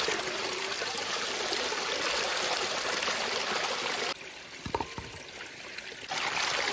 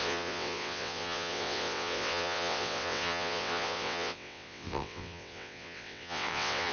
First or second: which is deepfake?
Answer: second